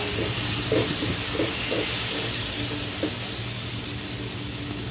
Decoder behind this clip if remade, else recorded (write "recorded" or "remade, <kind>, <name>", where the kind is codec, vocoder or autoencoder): recorded